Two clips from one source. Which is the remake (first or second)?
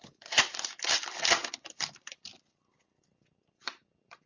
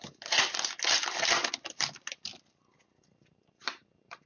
first